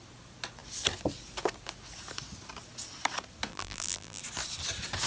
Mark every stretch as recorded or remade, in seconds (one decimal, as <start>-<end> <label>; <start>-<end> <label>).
0.0-3.5 recorded; 3.5-4.2 remade; 4.2-5.1 recorded